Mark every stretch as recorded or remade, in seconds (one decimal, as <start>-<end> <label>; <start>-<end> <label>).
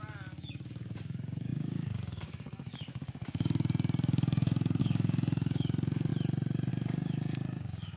0.0-6.1 remade; 6.1-6.7 recorded; 6.7-8.0 remade